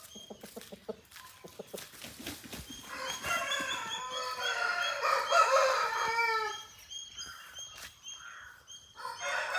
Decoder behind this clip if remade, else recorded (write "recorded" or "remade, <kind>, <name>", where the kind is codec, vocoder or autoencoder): recorded